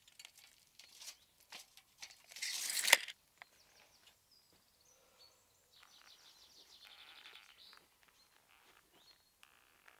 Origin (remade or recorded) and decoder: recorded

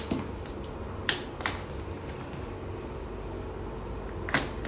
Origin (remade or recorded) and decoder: recorded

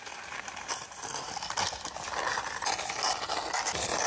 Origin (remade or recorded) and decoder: recorded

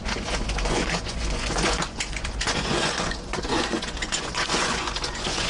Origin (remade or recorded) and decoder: remade, vocoder, Vocos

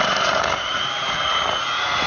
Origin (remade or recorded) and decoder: remade, vocoder, Vocos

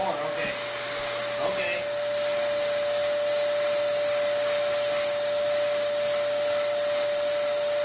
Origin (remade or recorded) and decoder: recorded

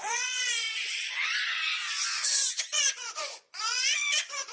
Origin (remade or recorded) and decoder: remade, vocoder, Vocos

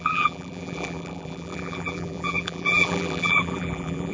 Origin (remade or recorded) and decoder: remade, vocoder, BigVGAN v2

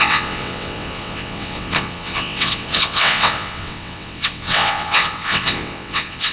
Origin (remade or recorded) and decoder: remade, vocoder, WaveNeXt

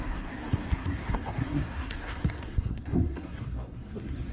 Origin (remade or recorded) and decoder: remade, codec, SNAC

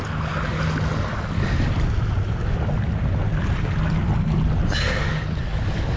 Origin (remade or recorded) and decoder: recorded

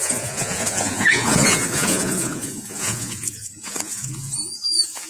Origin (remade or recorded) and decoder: remade, vocoder, Vocos